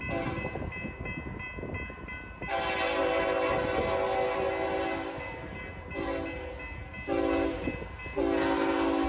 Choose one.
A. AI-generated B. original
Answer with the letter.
B